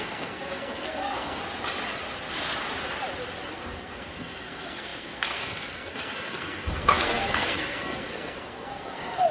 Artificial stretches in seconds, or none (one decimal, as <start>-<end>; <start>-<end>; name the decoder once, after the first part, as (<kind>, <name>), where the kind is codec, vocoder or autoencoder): 0.0-1.4 (codec, SNAC); 3.5-9.3